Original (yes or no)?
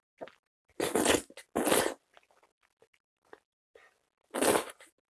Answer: yes